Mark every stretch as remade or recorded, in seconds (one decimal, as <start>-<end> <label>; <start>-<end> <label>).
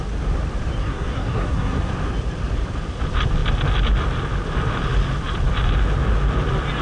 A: 0.0-0.8 recorded; 0.8-1.9 remade; 1.9-6.8 recorded